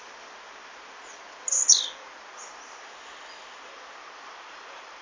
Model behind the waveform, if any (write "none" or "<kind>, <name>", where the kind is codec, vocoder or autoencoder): none